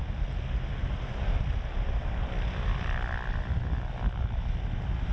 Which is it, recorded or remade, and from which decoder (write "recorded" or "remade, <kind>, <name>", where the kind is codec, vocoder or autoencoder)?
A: recorded